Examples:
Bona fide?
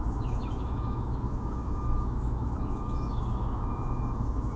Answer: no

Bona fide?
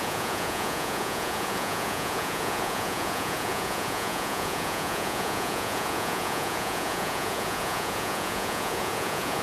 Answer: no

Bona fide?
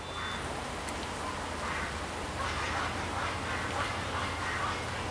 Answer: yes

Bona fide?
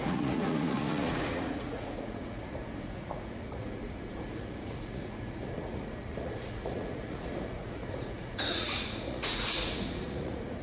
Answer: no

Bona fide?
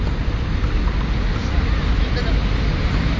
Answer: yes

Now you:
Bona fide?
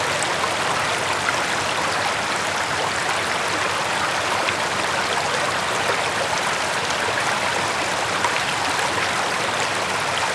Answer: yes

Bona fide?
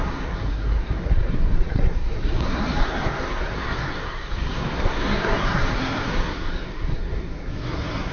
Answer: no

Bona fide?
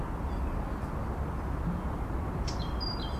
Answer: yes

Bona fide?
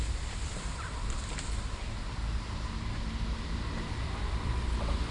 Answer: yes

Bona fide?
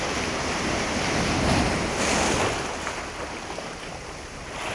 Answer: yes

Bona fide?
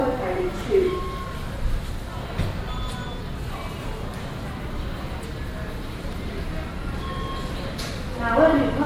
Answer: yes